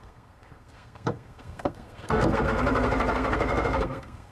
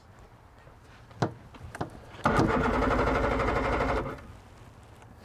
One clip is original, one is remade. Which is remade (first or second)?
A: first